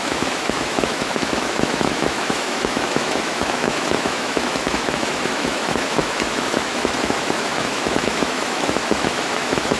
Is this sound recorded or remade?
remade